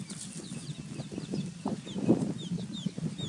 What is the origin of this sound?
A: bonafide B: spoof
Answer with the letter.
A